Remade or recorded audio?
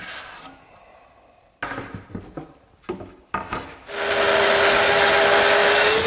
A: recorded